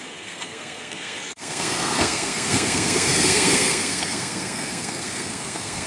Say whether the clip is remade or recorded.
remade